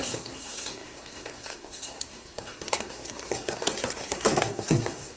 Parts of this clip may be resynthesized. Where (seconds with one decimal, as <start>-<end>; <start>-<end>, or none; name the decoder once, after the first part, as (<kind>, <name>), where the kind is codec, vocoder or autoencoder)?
0.0-5.2 (codec, SNAC)